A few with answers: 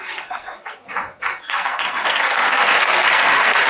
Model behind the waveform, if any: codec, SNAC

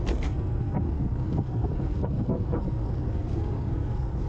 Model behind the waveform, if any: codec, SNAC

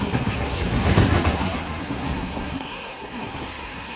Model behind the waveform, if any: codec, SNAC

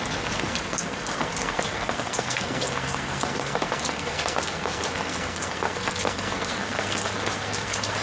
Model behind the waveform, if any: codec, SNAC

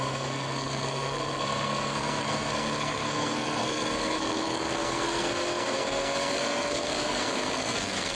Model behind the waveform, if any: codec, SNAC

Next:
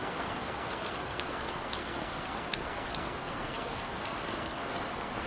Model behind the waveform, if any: codec, SNAC